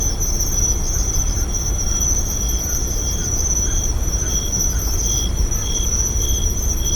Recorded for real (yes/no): yes